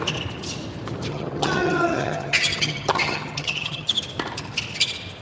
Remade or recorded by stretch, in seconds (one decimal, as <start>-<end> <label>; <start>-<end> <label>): 0.0-1.1 recorded; 1.1-3.9 remade; 3.9-5.2 recorded